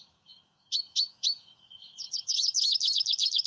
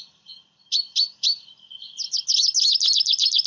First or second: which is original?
second